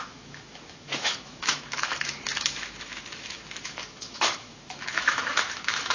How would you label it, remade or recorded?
remade